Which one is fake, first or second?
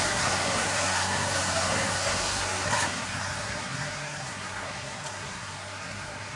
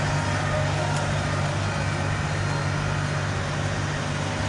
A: first